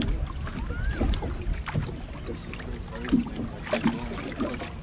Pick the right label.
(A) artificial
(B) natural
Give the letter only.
B